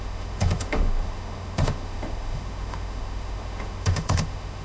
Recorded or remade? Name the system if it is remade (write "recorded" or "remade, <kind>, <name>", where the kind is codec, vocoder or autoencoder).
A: remade, autoencoder, DAC-VAE